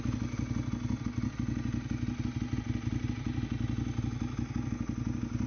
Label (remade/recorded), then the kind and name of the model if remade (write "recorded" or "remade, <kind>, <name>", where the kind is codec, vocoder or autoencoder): recorded